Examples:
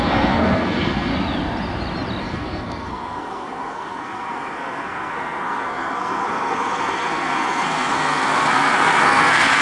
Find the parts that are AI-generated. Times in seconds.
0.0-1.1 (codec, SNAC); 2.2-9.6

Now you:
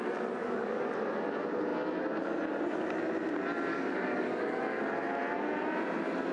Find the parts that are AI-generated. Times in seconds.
0.4-0.9 (codec, DAC); 3.7-4.6